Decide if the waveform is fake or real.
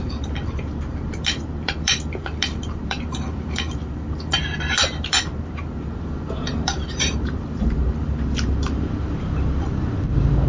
fake